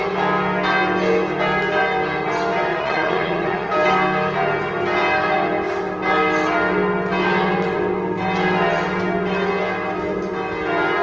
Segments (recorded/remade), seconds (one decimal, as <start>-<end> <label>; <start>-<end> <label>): 0.0-2.7 recorded; 2.7-3.7 remade; 3.7-11.0 recorded